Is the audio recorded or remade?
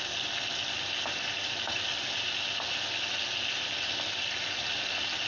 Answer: recorded